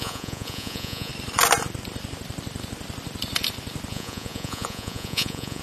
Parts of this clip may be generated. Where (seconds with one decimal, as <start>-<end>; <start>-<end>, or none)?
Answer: 0.0-1.1; 3.9-5.6